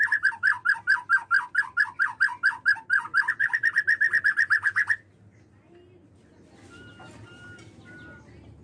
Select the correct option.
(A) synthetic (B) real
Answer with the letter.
B